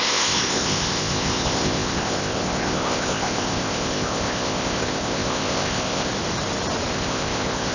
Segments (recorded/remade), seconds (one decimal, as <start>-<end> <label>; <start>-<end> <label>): 0.0-6.1 remade; 6.1-6.9 recorded; 6.9-7.7 remade